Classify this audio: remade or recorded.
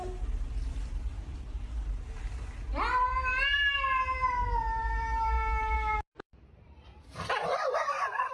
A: remade